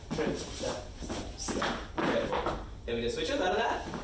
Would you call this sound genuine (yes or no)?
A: yes